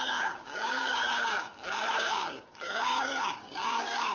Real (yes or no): no